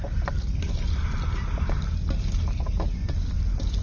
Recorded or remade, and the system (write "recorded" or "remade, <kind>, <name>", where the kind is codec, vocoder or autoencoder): recorded